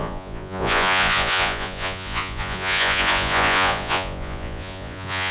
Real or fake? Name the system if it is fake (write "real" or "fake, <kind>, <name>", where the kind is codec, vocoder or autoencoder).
fake, vocoder, Vocos